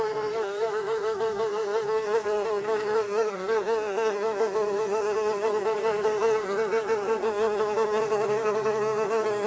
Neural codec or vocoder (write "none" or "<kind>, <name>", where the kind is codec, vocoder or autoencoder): codec, SNAC